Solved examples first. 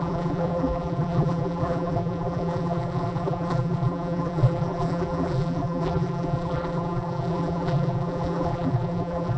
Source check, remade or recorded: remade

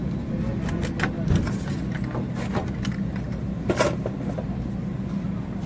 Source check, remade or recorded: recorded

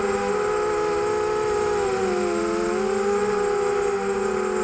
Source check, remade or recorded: recorded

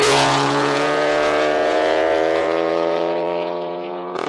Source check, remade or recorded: remade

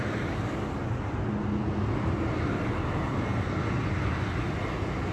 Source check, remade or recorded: recorded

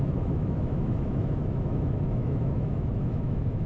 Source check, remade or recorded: remade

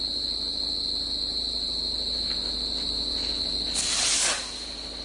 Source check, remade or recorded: recorded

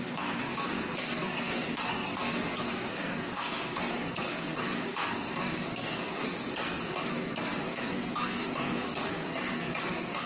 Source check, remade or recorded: remade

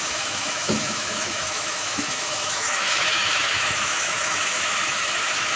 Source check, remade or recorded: remade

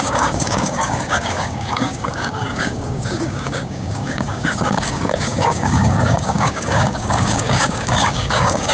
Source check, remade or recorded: remade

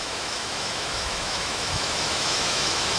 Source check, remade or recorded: remade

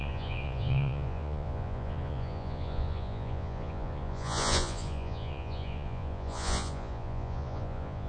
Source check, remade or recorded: remade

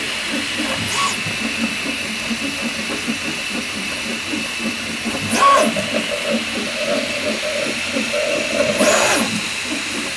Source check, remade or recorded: remade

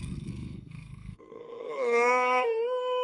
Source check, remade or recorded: remade